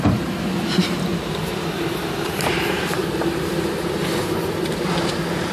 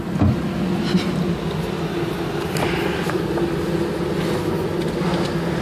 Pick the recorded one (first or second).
second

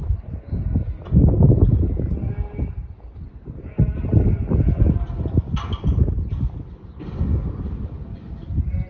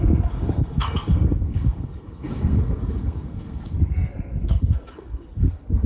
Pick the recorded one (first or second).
first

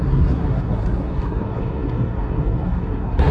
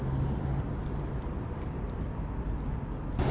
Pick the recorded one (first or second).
second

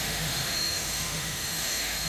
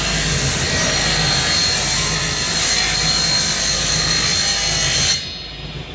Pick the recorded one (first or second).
second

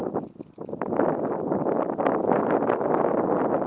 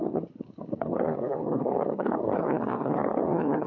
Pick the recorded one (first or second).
first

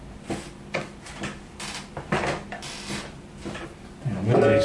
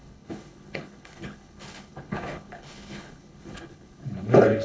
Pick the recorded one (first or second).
first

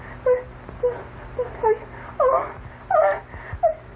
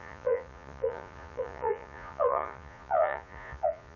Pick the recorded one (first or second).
first